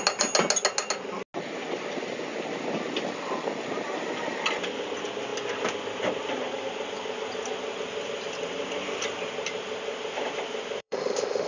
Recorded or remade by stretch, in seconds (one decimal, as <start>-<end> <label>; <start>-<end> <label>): 0.0-10.8 recorded; 10.8-11.5 remade